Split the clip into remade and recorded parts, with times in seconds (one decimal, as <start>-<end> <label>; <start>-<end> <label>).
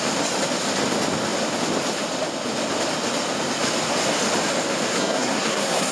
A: 0.0-4.9 recorded; 4.9-5.9 remade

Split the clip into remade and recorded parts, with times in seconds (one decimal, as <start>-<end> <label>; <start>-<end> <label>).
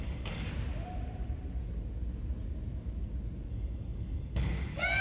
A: 0.0-0.5 remade; 0.5-3.5 recorded; 3.5-5.0 remade